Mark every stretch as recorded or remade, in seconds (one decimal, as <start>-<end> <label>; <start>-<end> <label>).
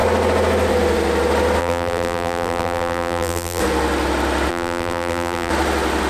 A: 0.0-1.6 recorded; 1.6-3.6 remade; 3.6-4.5 recorded; 4.5-5.5 remade; 5.5-6.1 recorded